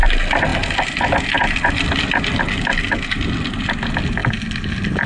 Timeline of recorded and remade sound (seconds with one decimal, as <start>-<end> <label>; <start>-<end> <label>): 0.0-5.1 recorded